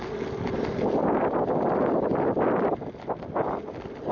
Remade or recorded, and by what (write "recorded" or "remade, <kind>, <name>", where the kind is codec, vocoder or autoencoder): recorded